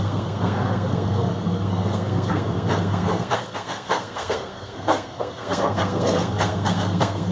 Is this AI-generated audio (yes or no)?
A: yes